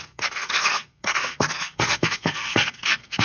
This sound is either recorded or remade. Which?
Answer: remade